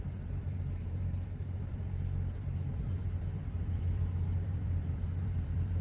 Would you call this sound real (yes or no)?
no